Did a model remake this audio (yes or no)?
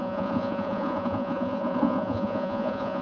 yes